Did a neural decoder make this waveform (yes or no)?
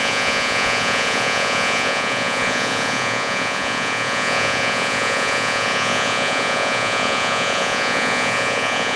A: yes